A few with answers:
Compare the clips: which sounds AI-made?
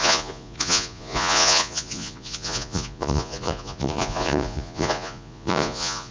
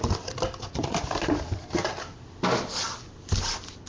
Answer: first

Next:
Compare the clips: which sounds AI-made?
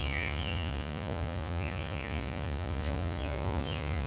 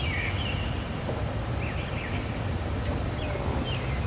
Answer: first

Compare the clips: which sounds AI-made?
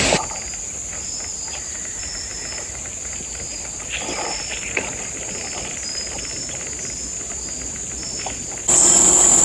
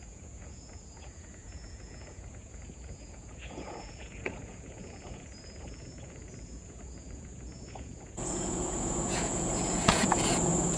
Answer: second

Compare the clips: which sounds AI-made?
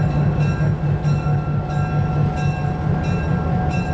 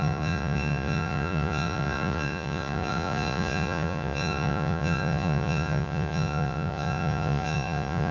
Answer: second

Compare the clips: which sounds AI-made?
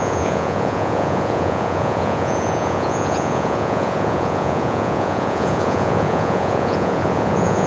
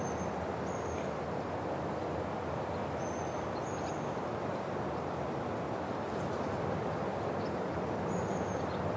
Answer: first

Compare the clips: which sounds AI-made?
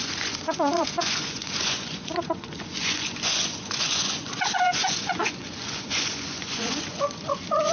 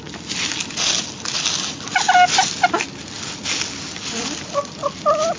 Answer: first